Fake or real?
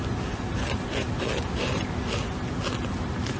real